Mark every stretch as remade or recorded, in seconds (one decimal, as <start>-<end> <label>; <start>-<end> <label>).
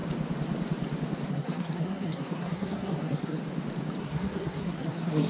0.0-1.3 recorded; 1.3-3.4 remade; 3.4-4.0 recorded; 4.0-5.3 remade